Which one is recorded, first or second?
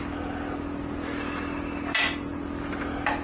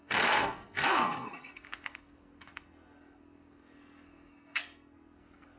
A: first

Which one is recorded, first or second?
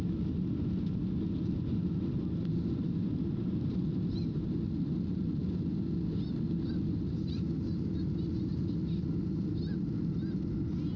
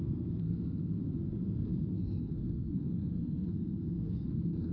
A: first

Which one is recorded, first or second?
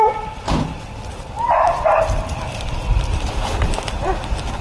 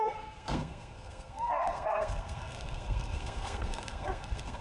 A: first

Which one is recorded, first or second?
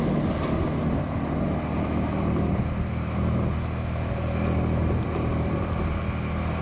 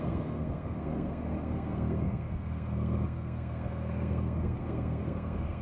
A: first